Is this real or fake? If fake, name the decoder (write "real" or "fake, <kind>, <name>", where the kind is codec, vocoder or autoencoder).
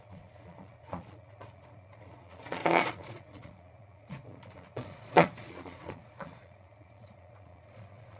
fake, vocoder, Vocos